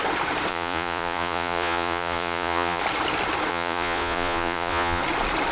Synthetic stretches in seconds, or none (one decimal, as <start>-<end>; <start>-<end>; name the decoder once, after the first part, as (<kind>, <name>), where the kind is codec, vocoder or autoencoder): 0.5-2.8 (vocoder, Vocos); 3.5-5.0